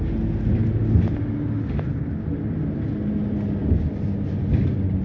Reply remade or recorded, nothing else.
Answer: recorded